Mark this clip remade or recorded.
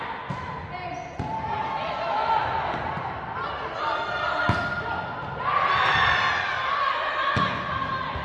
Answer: recorded